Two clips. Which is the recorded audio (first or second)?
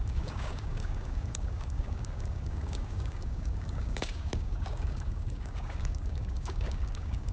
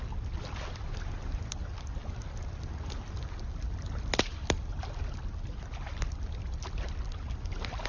second